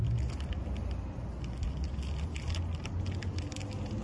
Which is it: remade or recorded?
recorded